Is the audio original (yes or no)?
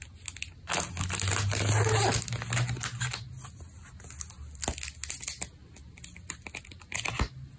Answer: yes